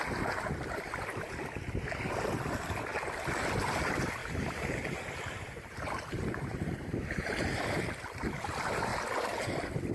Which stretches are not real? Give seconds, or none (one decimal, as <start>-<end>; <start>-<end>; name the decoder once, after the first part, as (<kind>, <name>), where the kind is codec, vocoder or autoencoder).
4.2-7.8 (vocoder, BigVGAN v2)